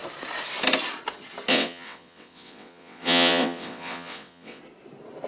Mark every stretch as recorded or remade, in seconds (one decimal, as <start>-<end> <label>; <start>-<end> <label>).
0.0-1.5 recorded; 1.5-4.6 remade; 4.6-5.3 recorded